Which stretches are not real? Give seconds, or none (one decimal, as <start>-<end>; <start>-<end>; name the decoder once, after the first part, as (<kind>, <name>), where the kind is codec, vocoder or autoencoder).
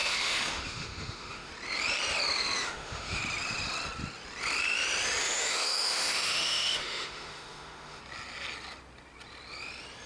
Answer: 0.0-1.5 (autoencoder, DAC-VAE); 2.6-3.2; 5.2-8.0